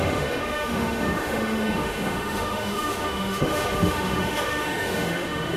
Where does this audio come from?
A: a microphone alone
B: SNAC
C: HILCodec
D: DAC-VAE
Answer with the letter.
D